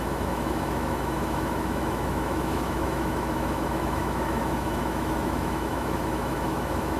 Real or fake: fake